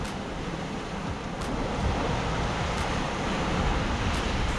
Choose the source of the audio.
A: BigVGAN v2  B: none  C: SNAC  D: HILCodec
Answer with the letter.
B